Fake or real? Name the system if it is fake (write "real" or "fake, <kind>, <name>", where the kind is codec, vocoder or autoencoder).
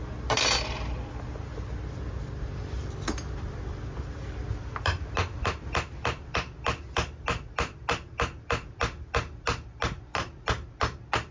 real